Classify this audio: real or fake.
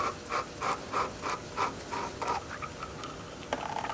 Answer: real